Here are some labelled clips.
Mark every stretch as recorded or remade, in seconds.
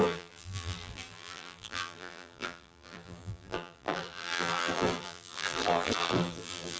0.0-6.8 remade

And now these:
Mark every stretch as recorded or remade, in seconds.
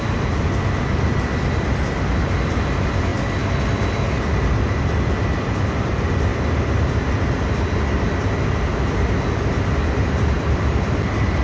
0.0-11.4 recorded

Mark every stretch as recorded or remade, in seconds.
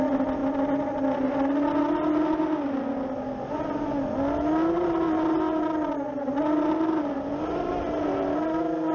0.0-8.9 recorded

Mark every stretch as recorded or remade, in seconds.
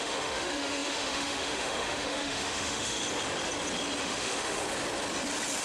0.0-3.0 remade; 3.0-4.0 recorded; 4.0-4.6 remade; 4.6-5.6 recorded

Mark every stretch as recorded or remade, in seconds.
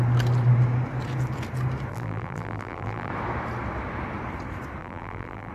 0.0-1.9 recorded; 1.9-3.1 remade; 3.1-4.8 recorded; 4.8-5.5 remade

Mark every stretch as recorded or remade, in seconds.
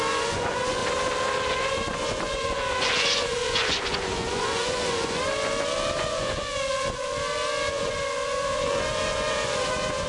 0.0-0.8 remade; 0.8-1.5 recorded; 1.5-5.3 remade; 5.3-6.0 recorded; 6.0-7.1 remade; 7.1-7.7 recorded; 7.7-10.1 remade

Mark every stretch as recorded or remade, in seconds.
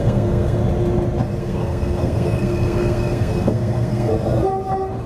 0.0-0.6 remade; 0.6-1.4 recorded; 1.4-4.1 remade; 4.1-5.1 recorded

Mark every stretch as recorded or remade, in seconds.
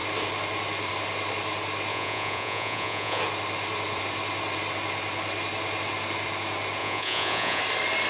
0.0-1.9 recorded; 1.9-3.2 remade; 3.2-6.8 recorded; 6.8-7.6 remade; 7.6-8.1 recorded